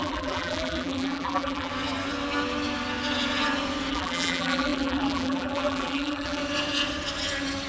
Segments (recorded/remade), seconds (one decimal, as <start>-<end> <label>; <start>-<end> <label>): 0.0-1.7 remade; 1.7-3.9 recorded; 3.9-6.4 remade; 6.4-7.7 recorded